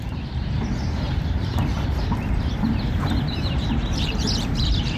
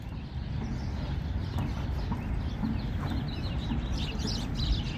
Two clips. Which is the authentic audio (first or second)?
second